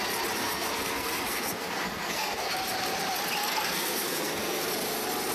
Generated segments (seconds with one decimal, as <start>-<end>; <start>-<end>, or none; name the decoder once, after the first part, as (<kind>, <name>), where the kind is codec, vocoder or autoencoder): 0.4-2.5 (codec, SNAC); 3.4-4.7